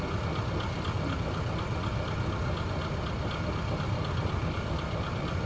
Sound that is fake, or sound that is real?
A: real